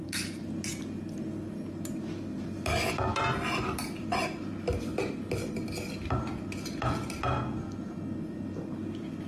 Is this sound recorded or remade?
recorded